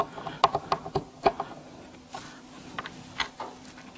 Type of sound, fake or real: real